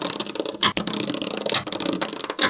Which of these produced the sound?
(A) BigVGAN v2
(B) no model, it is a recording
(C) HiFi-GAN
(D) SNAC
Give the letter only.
B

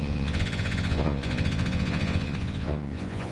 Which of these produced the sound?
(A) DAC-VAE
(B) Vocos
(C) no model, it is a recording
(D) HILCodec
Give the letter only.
B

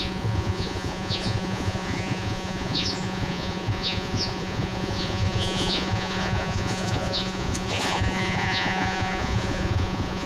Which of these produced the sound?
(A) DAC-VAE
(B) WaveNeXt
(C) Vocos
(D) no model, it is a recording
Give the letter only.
C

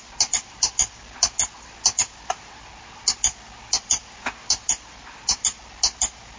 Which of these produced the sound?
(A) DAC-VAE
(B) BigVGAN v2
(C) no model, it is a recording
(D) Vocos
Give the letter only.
C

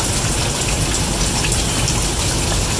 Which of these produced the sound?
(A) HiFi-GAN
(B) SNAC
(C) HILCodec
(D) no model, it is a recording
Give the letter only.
D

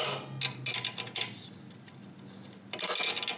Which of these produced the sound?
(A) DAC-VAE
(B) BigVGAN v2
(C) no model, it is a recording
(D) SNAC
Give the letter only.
C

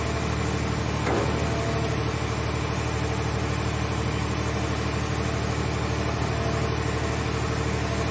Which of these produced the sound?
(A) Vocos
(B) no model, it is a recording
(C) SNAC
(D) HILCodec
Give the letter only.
B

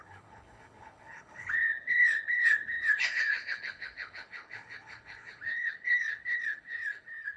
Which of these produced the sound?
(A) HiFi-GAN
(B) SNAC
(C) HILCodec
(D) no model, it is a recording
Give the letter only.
C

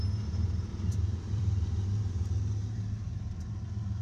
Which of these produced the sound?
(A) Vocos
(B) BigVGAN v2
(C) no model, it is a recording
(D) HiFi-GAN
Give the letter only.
B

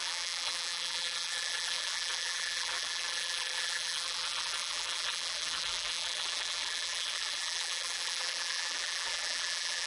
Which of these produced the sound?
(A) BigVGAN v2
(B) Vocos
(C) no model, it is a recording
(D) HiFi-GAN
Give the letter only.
A